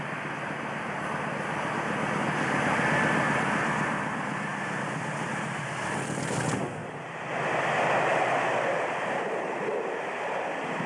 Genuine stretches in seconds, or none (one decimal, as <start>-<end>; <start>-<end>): 0.0-10.9